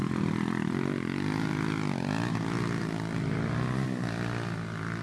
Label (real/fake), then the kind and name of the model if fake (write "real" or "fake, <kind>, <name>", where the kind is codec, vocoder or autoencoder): real